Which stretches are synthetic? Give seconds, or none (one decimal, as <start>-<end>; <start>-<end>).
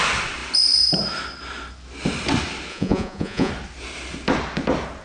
2.7-3.5